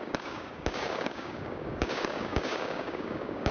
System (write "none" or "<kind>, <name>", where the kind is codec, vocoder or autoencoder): codec, DAC